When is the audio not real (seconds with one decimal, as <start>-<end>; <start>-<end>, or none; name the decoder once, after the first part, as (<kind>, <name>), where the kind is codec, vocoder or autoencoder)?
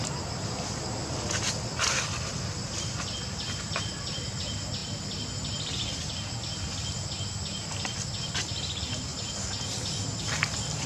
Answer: none